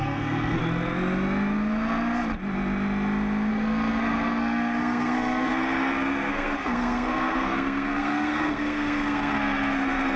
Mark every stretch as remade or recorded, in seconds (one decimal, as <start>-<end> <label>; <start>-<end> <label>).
0.0-0.6 remade; 0.6-3.5 recorded; 3.5-10.2 remade